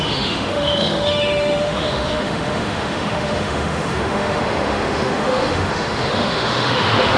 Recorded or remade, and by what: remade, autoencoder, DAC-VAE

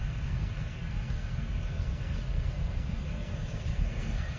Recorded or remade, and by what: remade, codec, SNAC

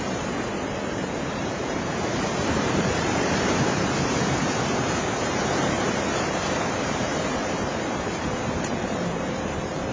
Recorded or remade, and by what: remade, vocoder, BigVGAN v2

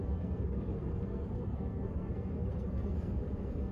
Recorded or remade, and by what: remade, codec, SNAC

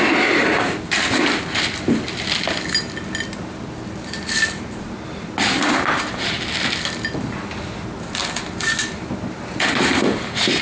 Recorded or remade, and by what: recorded